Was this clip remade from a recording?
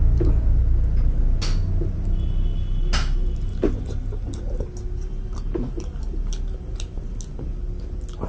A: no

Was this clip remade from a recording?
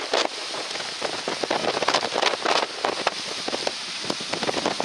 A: no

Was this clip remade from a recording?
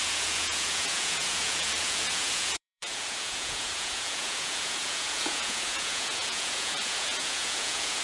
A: yes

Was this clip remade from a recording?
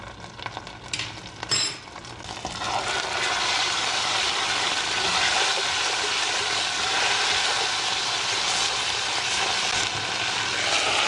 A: no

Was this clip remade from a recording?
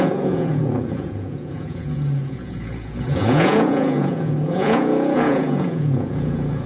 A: yes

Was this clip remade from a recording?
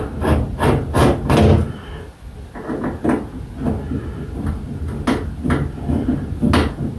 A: no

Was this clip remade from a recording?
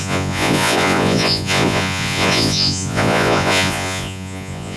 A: yes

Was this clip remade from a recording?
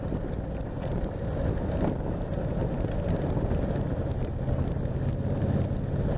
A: no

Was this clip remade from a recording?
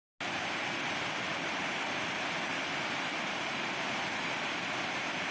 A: no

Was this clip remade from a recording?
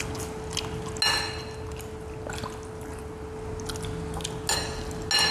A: no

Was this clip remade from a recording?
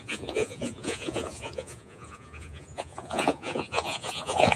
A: yes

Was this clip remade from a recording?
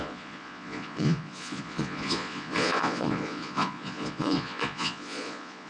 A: yes